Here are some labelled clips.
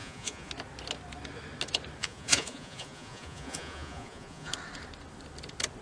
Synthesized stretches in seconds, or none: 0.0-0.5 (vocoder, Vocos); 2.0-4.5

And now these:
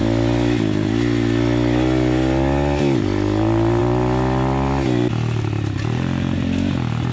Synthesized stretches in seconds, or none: none

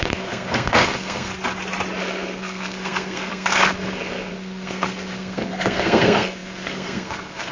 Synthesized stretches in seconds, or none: 0.0-1.3 (codec, SNAC); 2.0-7.5

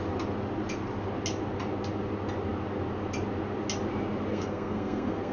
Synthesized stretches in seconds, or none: 4.3-5.3 (codec, SNAC)

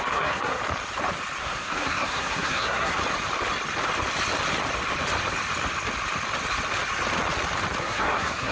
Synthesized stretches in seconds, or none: 0.0-0.6 (codec, SNAC); 1.4-3.0; 7.8-8.5

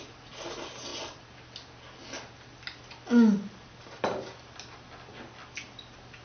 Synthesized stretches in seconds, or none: none